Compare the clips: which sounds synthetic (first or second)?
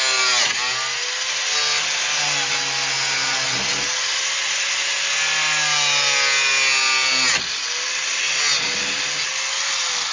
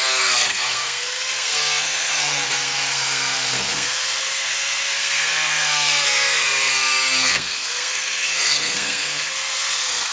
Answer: second